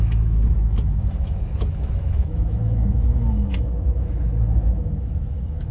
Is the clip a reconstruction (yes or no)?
yes